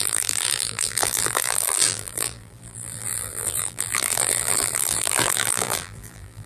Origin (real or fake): fake